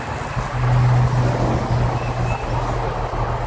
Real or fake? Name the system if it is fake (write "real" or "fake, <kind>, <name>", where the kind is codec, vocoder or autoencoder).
real